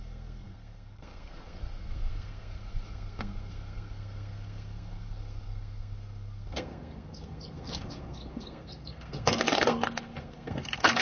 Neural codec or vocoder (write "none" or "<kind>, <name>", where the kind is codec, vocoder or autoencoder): codec, SNAC